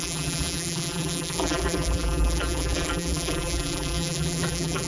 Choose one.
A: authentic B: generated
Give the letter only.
B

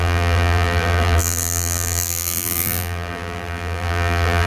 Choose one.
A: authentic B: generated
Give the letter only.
B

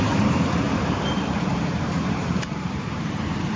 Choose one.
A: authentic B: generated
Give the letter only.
B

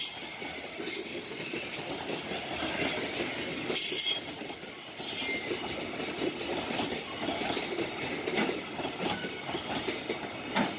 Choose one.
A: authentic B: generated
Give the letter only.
A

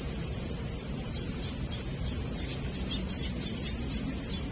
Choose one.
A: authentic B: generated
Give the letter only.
B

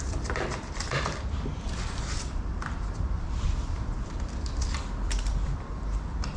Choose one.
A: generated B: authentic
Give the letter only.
B